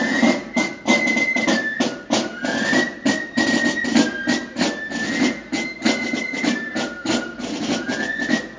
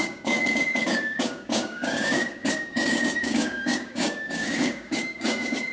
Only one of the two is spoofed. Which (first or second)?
second